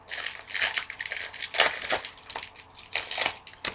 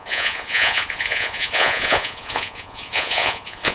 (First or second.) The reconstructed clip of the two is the second